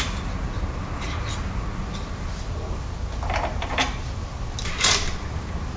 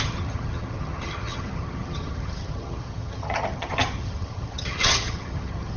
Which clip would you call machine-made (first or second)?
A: second